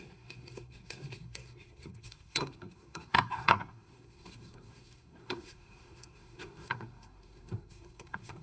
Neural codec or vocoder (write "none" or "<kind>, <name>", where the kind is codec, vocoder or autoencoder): codec, SNAC